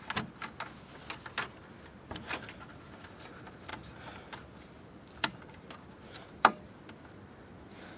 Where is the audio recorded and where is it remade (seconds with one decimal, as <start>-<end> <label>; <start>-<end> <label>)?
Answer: 0.0-8.0 recorded